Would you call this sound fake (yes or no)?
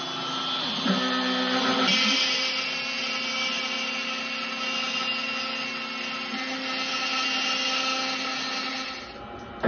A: no